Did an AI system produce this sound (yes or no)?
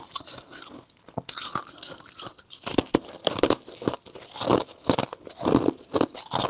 no